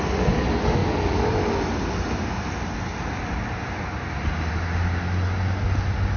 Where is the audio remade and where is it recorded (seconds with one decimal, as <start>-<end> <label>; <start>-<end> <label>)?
0.0-6.2 recorded